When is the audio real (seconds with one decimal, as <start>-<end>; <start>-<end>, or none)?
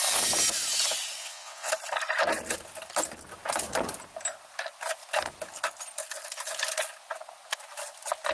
0.0-1.2; 1.7-8.3